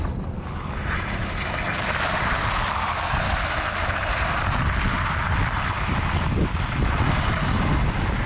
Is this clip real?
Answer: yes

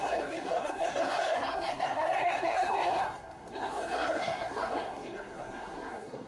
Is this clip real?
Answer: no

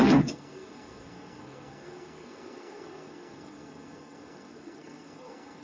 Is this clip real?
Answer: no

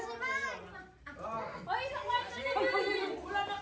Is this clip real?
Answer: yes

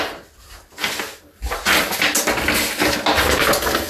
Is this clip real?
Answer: yes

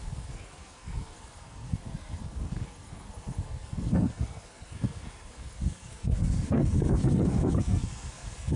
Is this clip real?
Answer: no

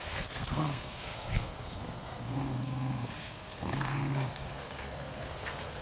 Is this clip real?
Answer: no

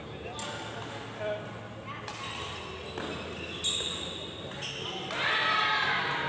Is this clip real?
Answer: yes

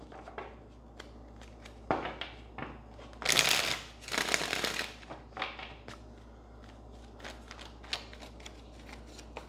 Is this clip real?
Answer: yes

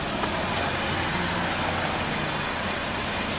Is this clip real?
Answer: yes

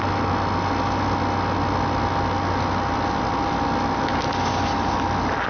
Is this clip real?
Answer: yes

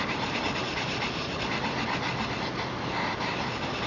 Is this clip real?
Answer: yes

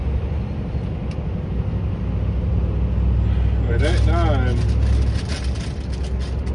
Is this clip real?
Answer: yes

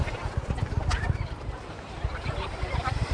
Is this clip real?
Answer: yes